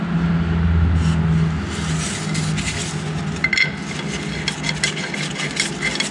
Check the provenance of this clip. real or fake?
real